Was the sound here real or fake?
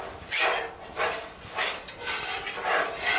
real